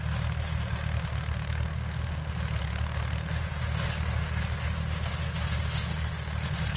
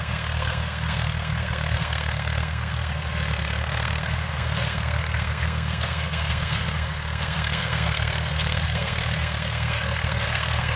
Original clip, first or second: first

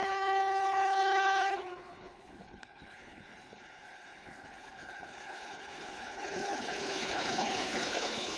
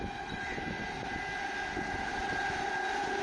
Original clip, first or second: second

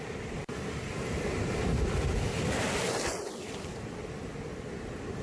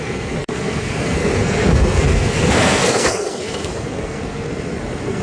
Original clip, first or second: first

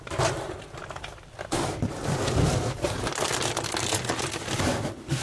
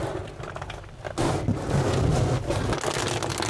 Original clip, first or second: second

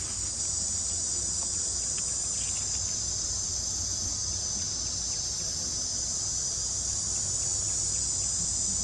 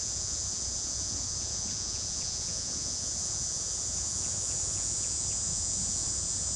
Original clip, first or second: first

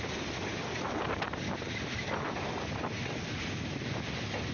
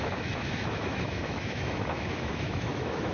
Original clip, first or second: first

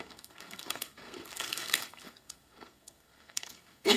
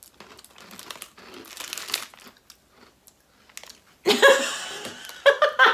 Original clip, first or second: second